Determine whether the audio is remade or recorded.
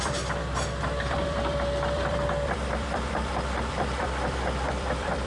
remade